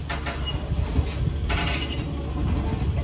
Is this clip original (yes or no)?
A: yes